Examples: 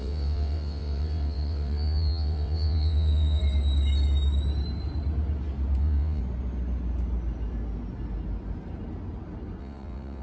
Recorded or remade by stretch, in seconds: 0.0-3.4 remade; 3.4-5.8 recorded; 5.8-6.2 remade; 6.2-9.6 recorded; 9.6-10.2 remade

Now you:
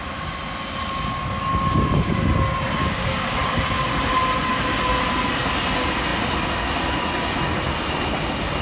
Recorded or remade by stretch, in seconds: 0.0-2.8 recorded; 2.8-3.6 remade; 3.6-8.6 recorded

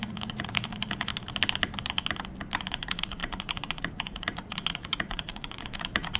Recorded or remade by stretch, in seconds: 0.0-1.1 remade; 1.1-2.7 recorded; 2.7-6.2 remade

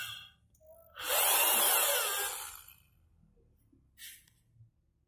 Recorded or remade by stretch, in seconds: 0.0-5.1 recorded

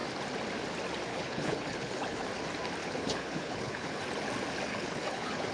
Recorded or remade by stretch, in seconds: 0.0-1.1 recorded; 1.1-2.3 remade; 2.3-2.8 recorded; 2.8-4.0 remade; 4.0-4.7 recorded; 4.7-5.5 remade

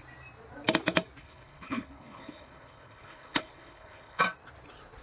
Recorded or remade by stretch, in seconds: 0.0-1.2 recorded; 1.2-4.2 remade; 4.2-5.0 recorded

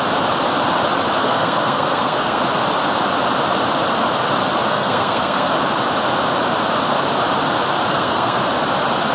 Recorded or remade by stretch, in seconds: 0.0-1.2 recorded; 1.2-2.4 remade; 2.4-4.7 recorded; 4.7-5.5 remade; 5.5-7.9 recorded; 7.9-8.4 remade; 8.4-9.1 recorded